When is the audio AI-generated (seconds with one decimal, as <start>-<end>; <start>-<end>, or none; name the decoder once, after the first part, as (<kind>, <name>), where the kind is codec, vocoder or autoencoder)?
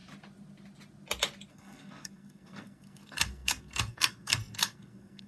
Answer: 1.5-5.3 (codec, SNAC)